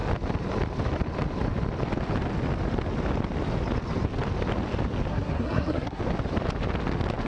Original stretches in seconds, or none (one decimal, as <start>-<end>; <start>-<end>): 0.0-5.1; 6.0-7.3